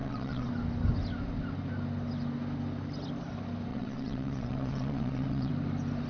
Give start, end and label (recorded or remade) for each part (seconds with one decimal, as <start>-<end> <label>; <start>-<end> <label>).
0.0-0.5 remade; 0.5-3.7 recorded; 3.7-5.5 remade; 5.5-6.1 recorded